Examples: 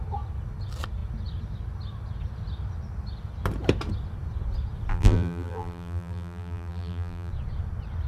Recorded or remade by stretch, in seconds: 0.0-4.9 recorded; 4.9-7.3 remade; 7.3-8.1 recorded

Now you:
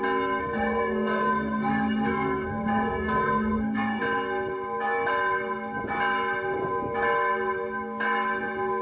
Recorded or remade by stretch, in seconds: 0.0-0.4 recorded; 0.4-4.0 remade; 4.0-8.8 recorded

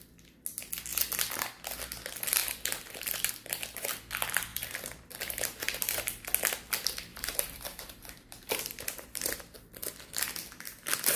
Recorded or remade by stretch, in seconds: 0.0-4.5 recorded; 4.5-6.0 remade; 6.0-7.1 recorded; 7.1-8.6 remade; 8.6-11.2 recorded

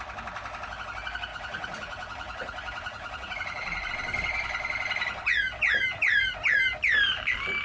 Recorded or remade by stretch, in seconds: 0.0-1.3 recorded; 1.3-3.9 remade; 3.9-7.6 recorded

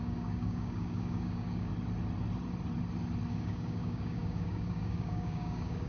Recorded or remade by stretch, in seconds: 0.0-1.7 remade; 1.7-3.3 recorded; 3.3-5.9 remade